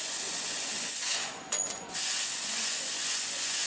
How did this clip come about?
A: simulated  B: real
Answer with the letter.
A